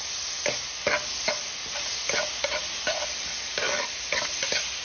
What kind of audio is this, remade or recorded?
recorded